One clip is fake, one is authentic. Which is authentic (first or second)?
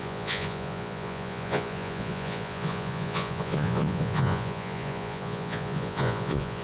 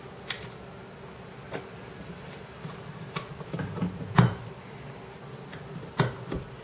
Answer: second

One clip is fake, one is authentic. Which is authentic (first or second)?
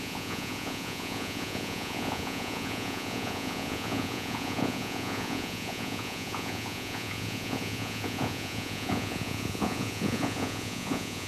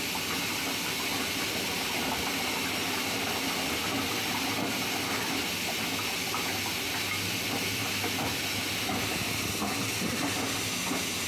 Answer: second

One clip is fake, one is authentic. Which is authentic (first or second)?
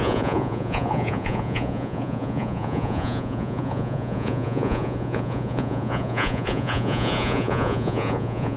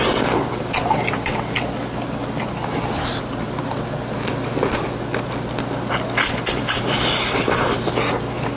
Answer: second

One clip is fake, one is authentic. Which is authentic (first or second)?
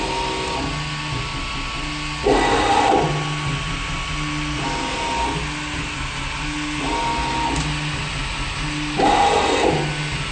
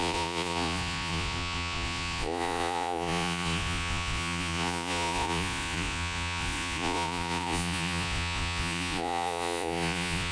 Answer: first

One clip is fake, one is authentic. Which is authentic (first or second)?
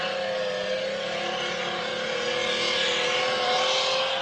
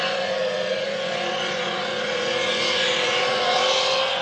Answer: first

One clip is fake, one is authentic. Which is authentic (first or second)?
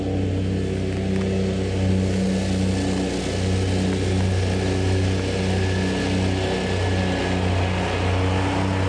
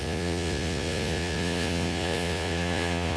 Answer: first